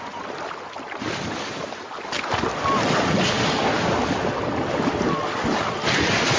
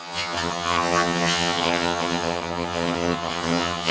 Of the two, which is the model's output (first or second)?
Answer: second